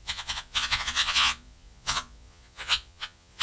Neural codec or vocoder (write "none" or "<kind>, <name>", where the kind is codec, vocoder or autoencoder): vocoder, Vocos